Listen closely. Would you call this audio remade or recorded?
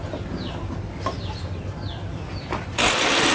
recorded